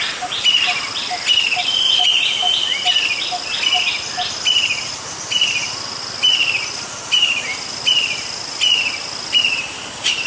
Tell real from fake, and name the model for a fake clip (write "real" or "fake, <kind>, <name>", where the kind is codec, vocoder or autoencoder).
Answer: real